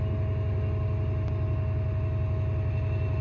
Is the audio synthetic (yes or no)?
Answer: no